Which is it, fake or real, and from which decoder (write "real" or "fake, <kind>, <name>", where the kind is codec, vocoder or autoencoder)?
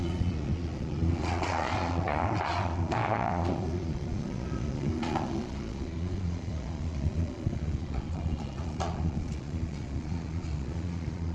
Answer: fake, vocoder, Vocos